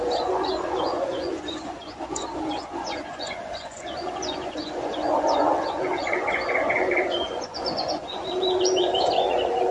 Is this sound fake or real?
fake